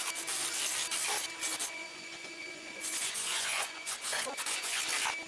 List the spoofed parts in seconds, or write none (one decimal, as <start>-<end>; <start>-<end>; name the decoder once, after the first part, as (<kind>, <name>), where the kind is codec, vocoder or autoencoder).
1.6-4.8 (vocoder, Vocos)